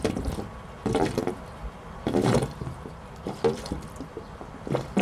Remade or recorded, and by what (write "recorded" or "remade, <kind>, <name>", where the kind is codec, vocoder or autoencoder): remade, vocoder, BigVGAN v2